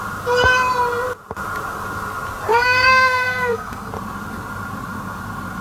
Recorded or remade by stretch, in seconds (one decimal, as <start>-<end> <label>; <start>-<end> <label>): 0.0-2.5 recorded; 2.5-3.9 remade; 3.9-5.6 recorded